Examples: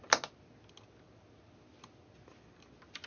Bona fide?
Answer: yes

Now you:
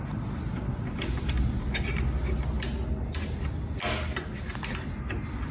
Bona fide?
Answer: yes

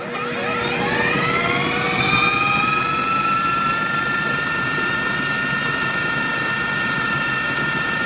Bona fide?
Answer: yes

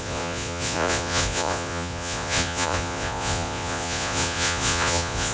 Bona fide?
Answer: no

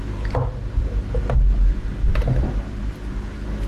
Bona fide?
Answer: yes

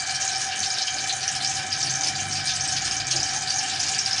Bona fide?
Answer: yes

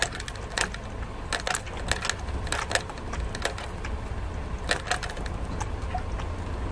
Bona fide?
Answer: yes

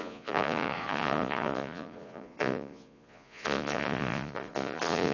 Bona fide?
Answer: no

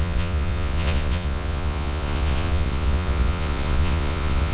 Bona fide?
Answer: no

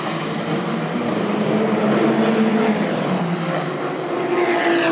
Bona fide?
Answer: yes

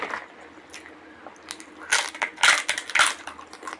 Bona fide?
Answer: yes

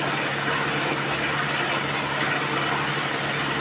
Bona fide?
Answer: yes